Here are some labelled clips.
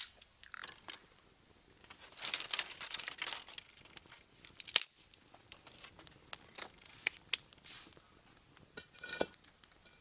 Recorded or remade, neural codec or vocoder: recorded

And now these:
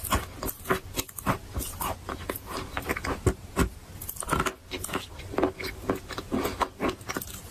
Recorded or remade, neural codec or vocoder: recorded